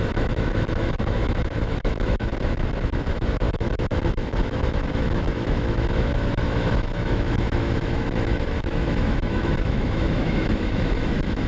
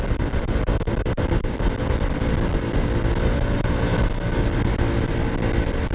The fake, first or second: first